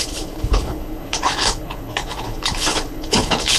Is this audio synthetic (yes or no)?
yes